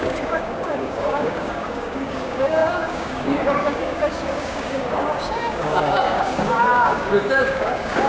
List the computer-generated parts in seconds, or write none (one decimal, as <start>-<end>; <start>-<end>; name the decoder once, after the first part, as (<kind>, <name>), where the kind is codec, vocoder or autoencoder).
0.0-8.1 (codec, DAC)